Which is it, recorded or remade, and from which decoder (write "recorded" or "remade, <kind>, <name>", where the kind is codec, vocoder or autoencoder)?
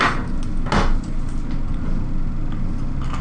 recorded